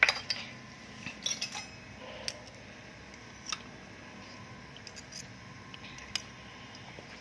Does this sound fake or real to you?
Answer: real